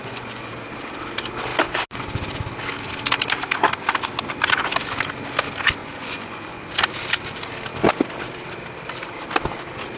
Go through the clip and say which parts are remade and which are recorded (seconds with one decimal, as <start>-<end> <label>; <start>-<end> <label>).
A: 0.0-0.5 remade; 0.5-5.8 recorded; 5.8-6.7 remade; 6.7-10.0 recorded